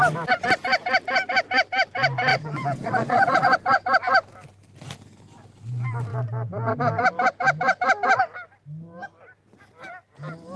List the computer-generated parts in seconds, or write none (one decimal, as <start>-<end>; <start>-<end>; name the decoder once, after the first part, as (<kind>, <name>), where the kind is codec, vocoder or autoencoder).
2.3-3.4 (vocoder, Vocos)